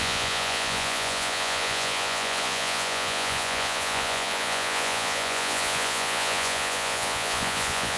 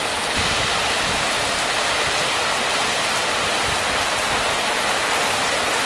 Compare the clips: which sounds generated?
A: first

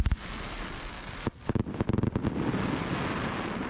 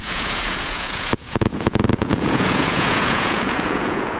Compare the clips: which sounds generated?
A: second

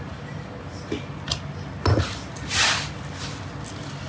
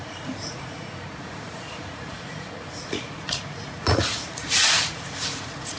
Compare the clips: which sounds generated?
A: second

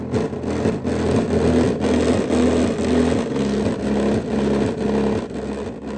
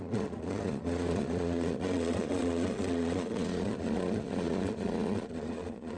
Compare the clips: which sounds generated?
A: second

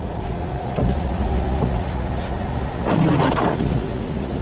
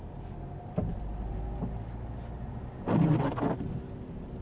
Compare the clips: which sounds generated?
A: first